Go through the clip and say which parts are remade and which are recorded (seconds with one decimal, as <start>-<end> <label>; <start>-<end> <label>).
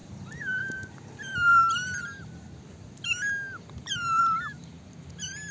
0.0-0.9 remade; 0.9-5.5 recorded